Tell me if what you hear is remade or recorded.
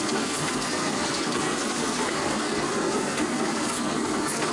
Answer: remade